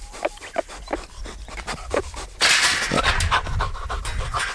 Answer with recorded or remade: recorded